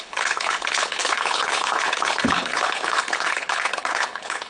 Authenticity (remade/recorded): remade